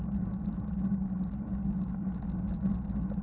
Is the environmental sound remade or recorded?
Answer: recorded